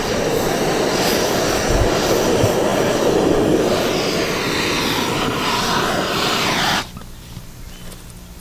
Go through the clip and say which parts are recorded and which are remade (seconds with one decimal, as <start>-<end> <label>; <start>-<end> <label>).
0.0-8.4 recorded